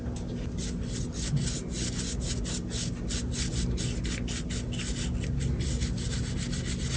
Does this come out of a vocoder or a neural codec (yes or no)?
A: no